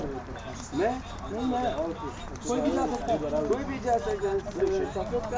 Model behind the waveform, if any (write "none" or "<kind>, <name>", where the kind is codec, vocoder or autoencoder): none